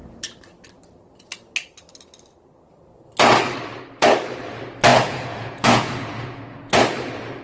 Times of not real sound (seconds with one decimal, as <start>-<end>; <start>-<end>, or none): 4.9-6.8